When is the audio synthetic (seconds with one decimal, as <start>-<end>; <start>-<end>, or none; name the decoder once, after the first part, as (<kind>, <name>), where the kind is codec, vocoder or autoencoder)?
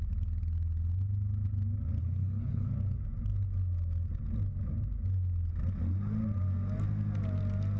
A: 2.0-2.7 (codec, HILCodec)